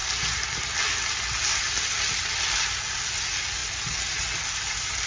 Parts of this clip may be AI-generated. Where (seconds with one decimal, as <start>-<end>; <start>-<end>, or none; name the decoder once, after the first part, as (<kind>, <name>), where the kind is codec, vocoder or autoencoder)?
none